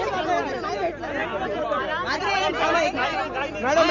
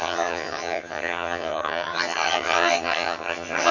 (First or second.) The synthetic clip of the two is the second